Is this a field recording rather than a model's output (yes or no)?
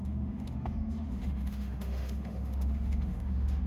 no